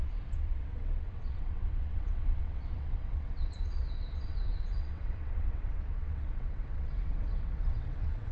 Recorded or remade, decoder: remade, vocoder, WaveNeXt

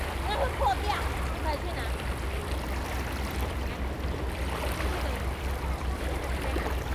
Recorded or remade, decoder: recorded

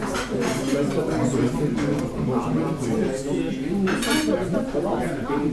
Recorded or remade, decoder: recorded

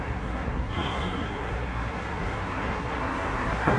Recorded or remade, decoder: remade, codec, SNAC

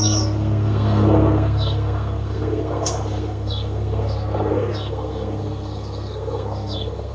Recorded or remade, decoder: remade, codec, SNAC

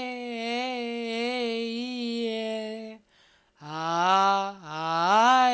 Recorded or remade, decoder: recorded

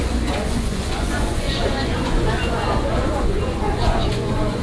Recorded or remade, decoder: remade, vocoder, Vocos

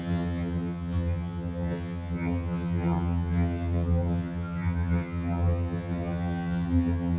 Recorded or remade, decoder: remade, vocoder, HiFi-GAN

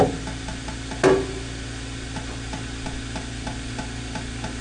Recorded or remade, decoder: recorded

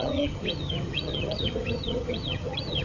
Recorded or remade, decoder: remade, vocoder, HiFi-GAN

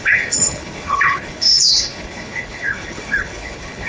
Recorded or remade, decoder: remade, codec, HILCodec